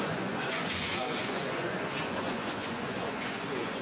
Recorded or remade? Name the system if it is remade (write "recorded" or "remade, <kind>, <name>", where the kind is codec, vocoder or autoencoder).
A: remade, vocoder, Vocos